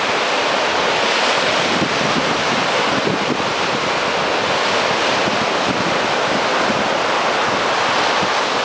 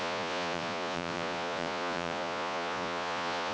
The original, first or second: first